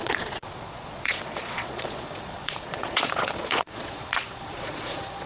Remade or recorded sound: remade